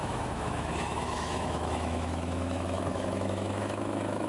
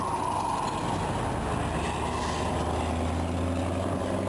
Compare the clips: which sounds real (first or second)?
second